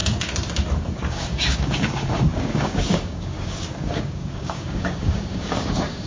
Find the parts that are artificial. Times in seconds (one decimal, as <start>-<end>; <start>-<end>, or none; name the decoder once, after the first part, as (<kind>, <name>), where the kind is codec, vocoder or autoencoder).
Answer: 1.0-6.1 (codec, DAC)